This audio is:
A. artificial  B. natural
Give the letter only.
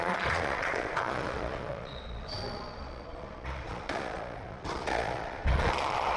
A